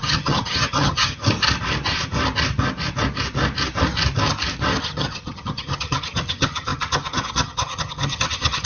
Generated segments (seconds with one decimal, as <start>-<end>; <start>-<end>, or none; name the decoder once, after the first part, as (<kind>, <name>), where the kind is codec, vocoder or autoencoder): 0.0-1.2 (vocoder, HiFi-GAN); 4.8-8.7